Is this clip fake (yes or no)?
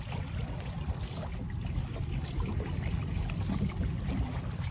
no